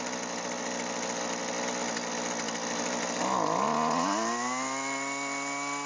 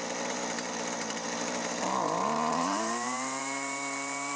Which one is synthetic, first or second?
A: second